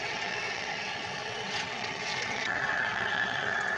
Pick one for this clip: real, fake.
fake